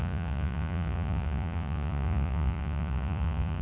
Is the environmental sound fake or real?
fake